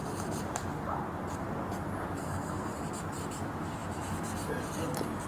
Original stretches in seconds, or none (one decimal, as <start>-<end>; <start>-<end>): 0.0-2.2; 2.7-5.3